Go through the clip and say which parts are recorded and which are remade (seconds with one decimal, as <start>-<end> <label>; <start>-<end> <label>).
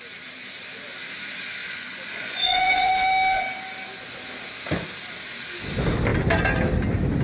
0.0-1.6 recorded; 1.6-2.9 remade; 2.9-7.2 recorded